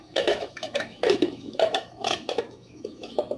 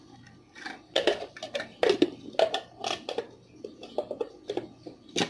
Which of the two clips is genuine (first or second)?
second